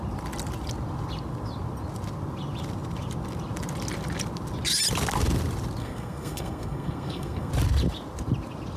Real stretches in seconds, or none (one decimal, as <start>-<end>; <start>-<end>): 0.0-5.8; 7.5-8.8